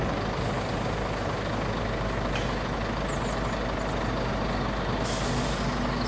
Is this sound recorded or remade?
recorded